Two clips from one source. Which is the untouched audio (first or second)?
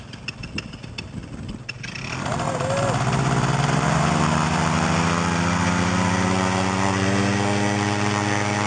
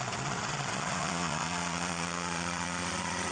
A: first